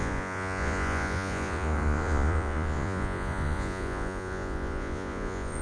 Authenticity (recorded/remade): remade